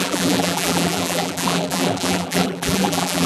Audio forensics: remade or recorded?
remade